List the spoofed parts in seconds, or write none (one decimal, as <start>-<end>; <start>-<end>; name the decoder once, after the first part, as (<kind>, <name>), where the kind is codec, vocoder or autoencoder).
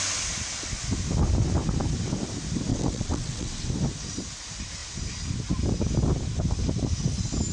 2.7-3.7 (vocoder, WaveNeXt)